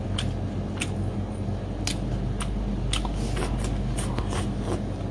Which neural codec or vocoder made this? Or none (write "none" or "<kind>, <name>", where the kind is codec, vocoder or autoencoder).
none